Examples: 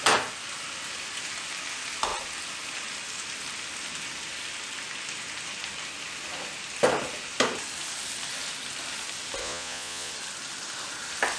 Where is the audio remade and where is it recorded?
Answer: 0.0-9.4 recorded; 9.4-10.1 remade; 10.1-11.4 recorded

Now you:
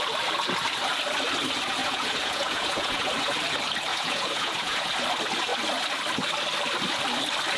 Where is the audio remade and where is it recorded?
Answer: 0.0-1.8 recorded; 1.8-3.1 remade; 3.1-3.9 recorded; 3.9-4.9 remade; 4.9-7.6 recorded

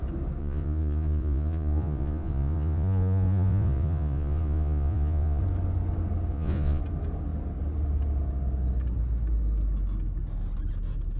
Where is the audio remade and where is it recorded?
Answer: 0.0-0.4 recorded; 0.4-5.4 remade; 5.4-6.3 recorded; 6.3-6.8 remade; 6.8-11.2 recorded

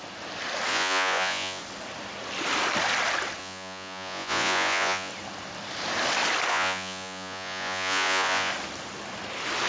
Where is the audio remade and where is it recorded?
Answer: 0.0-0.7 recorded; 0.7-1.6 remade; 1.6-3.4 recorded; 3.4-5.1 remade; 5.1-6.5 recorded; 6.5-8.5 remade; 8.5-9.7 recorded

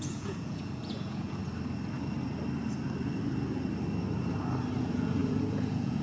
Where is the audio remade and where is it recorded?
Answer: 0.0-1.4 remade; 1.4-4.8 recorded; 4.8-6.0 remade

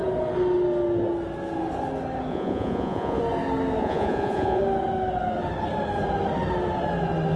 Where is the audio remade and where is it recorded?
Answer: 0.0-2.3 recorded; 2.3-3.2 remade; 3.2-3.8 recorded; 3.8-4.6 remade; 4.6-7.4 recorded

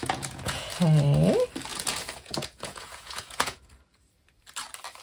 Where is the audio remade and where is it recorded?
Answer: 0.0-0.7 remade; 0.7-1.7 recorded; 1.7-3.7 remade; 3.7-5.0 recorded

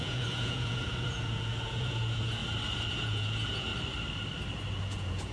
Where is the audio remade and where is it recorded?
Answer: 0.0-2.4 remade; 2.4-2.9 recorded; 2.9-3.7 remade; 3.7-4.8 recorded; 4.8-5.3 remade